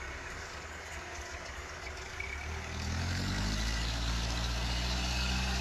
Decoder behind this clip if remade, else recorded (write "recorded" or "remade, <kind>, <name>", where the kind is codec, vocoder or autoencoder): remade, codec, DAC